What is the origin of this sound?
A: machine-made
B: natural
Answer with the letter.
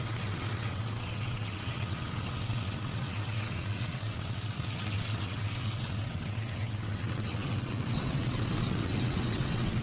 A